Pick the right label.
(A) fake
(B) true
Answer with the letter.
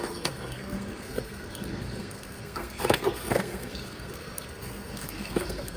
A